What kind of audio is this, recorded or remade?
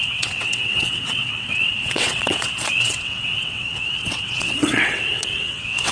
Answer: remade